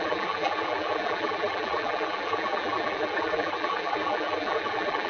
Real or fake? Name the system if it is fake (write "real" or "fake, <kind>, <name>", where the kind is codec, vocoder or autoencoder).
fake, vocoder, BigVGAN v2